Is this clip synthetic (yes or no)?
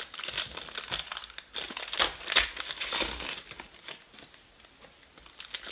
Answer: no